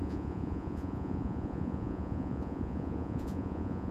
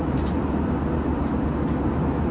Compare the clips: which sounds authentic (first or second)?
second